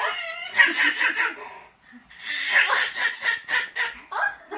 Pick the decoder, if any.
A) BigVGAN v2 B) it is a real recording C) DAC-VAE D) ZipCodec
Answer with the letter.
B